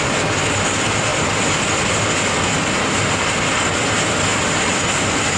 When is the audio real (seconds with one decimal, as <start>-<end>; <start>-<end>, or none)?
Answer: 0.0-4.3